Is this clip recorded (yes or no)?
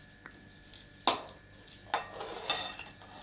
yes